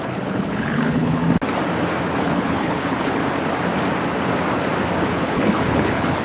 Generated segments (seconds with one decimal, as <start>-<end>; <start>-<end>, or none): 0.0-1.2; 2.2-3.2; 5.1-6.2

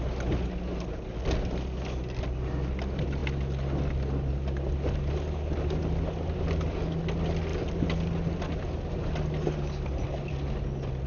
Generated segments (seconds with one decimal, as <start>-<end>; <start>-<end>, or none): none

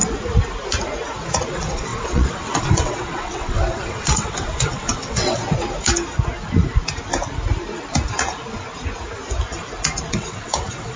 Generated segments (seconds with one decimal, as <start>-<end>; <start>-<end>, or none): 1.5-5.4; 10.1-11.0

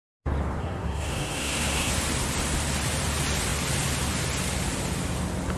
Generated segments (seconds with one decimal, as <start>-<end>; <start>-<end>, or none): 0.6-1.9

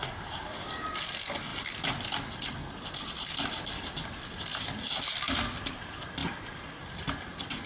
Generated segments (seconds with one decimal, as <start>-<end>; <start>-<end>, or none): none

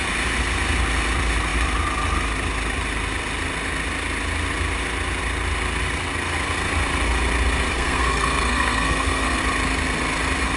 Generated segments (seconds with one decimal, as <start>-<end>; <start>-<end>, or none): 7.7-9.4

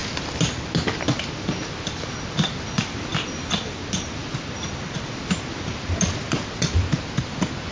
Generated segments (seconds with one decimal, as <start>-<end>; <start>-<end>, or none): none